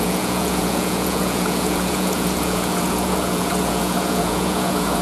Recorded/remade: remade